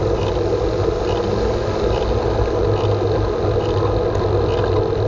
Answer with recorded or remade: recorded